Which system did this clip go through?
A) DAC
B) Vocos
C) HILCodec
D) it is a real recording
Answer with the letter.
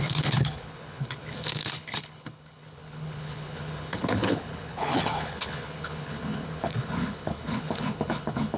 C